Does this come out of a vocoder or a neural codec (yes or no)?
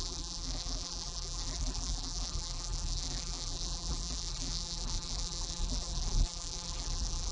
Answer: yes